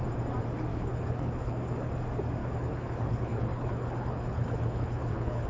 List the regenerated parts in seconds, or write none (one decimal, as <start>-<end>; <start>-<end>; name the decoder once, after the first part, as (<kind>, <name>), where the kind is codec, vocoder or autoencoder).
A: 0.7-1.9 (codec, HILCodec); 2.4-5.5